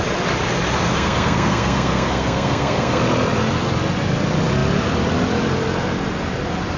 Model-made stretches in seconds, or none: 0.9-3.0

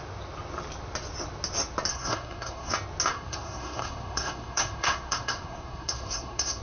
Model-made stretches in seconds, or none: 1.9-2.7; 3.1-6.6

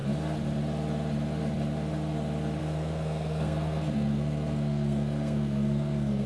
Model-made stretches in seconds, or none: 2.6-6.3

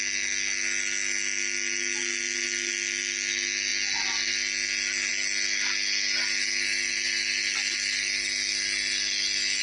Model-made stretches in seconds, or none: none

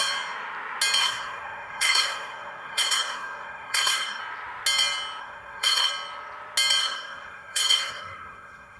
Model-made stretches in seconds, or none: 1.0-4.2; 5.2-5.9; 6.8-8.8

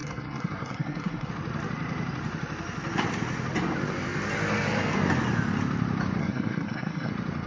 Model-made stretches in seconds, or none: 0.0-1.3; 6.2-7.1

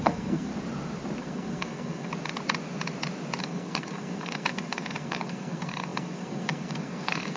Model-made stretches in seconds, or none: 0.0-0.5; 1.2-2.1; 3.4-7.4

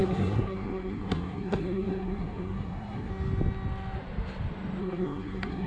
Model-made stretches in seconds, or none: 0.0-3.1; 4.8-5.7